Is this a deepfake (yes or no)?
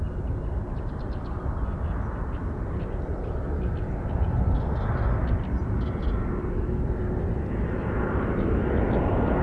no